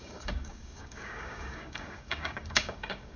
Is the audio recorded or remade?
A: remade